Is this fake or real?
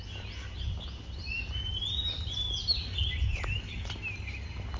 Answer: real